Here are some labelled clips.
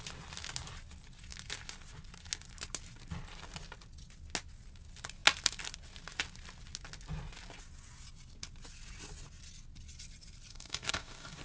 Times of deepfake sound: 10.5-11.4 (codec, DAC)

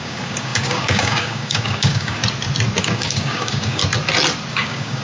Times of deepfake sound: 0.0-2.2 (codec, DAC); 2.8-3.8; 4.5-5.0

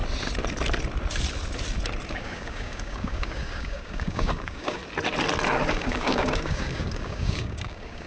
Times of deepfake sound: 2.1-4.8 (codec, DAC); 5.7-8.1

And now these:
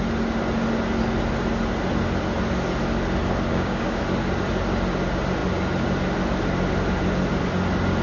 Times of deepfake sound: 3.5-4.0 (codec, DAC)

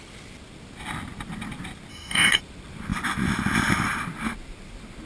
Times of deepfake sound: 1.9-2.4 (codec, DAC)

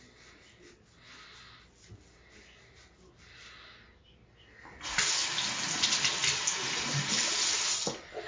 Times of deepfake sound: none

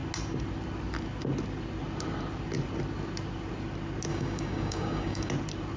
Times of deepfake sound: 4.1-5.3 (codec, DAC)

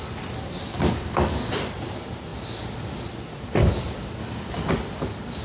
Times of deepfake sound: 0.7-1.5 (codec, DAC); 4.2-4.7